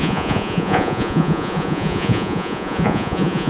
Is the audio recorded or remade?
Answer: remade